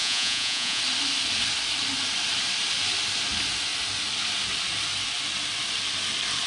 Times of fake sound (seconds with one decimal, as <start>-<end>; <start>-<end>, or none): 0.0-0.8